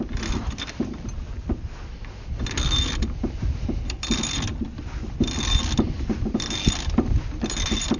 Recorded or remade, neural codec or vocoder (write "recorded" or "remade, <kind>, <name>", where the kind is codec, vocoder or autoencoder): recorded